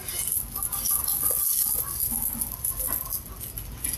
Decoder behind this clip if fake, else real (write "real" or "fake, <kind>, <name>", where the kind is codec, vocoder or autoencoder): real